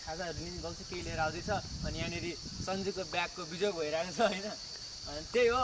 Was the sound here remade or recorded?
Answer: recorded